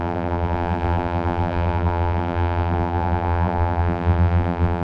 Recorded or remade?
remade